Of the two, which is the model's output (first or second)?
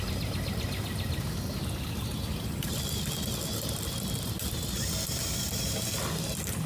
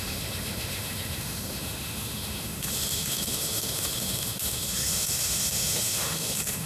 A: second